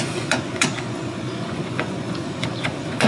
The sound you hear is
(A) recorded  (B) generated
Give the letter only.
B